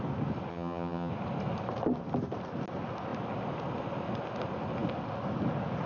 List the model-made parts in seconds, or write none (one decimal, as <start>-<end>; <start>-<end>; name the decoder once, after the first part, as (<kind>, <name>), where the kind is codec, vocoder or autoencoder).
0.5-1.1 (vocoder, HiFi-GAN)